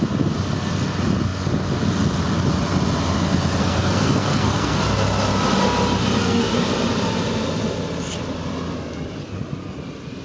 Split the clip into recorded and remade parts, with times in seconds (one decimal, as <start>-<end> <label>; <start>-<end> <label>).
0.0-3.6 recorded; 3.6-4.8 remade; 4.8-6.2 recorded; 6.2-6.7 remade; 6.7-10.2 recorded